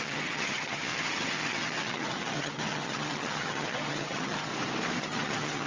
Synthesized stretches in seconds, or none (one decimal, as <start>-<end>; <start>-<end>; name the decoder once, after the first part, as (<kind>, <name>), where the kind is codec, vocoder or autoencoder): 0.0-4.5 (vocoder, HiFi-GAN); 5.0-5.7